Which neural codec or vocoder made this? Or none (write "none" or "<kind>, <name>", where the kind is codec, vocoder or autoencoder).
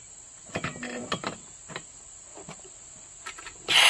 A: none